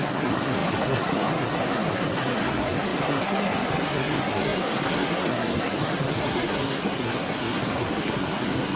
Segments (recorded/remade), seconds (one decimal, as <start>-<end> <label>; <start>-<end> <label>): 0.0-8.8 remade

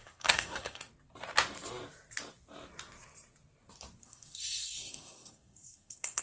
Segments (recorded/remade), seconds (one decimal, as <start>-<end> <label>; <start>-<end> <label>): 0.0-0.9 remade; 0.9-4.0 recorded; 4.0-6.2 remade

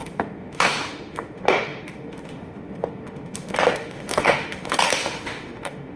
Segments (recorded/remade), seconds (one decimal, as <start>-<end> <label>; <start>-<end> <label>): 0.0-6.0 remade

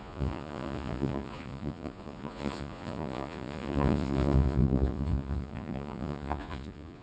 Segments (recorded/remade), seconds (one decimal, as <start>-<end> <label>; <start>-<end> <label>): 0.0-7.0 remade

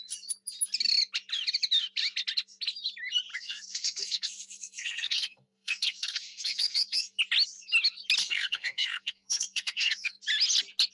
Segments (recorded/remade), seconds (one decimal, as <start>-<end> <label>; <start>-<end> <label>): 0.0-3.3 recorded; 3.3-7.2 remade; 7.2-8.2 recorded; 8.2-10.2 remade; 10.2-10.9 recorded